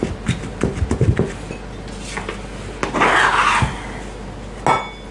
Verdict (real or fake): real